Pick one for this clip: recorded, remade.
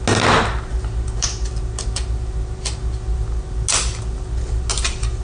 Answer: recorded